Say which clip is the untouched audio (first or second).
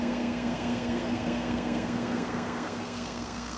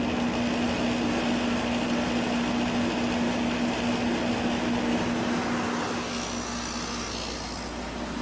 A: second